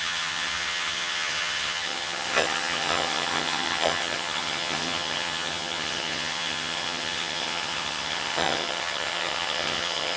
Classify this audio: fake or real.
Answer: fake